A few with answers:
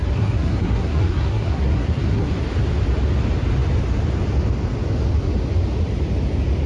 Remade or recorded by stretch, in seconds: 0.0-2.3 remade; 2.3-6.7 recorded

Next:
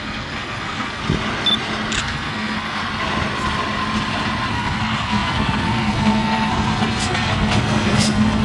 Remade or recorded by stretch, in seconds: 0.0-1.0 remade; 1.0-2.0 recorded; 2.0-2.8 remade; 2.8-4.5 recorded; 4.5-8.4 remade